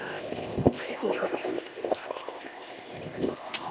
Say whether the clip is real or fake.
fake